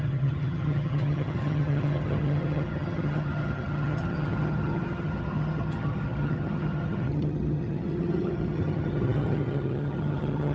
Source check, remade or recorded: remade